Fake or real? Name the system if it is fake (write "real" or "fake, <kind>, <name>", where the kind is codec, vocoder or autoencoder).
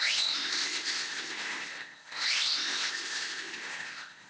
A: fake, codec, ZipCodec